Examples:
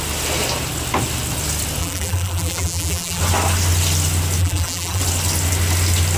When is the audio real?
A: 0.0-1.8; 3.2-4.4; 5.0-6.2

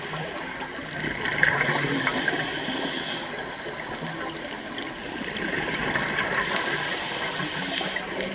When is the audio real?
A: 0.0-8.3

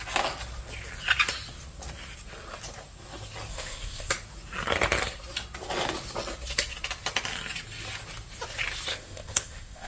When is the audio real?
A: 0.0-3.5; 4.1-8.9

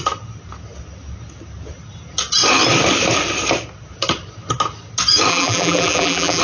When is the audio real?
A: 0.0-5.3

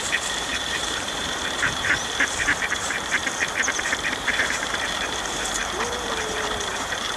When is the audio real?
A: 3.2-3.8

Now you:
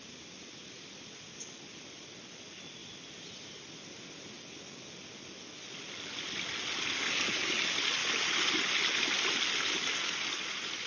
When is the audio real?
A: 0.0-2.8; 3.5-10.9

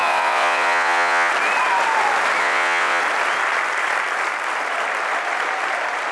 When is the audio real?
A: 1.3-2.4; 3.0-6.1